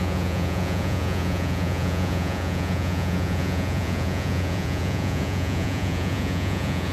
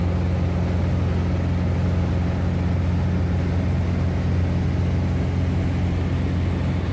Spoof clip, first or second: first